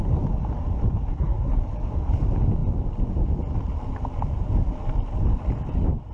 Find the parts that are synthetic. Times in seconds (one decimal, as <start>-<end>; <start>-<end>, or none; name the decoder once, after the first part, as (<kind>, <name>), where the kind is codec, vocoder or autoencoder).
1.1-1.6 (codec, SNAC)